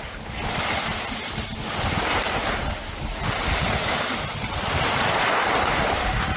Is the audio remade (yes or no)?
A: no